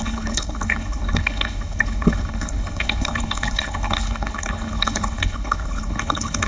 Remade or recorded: remade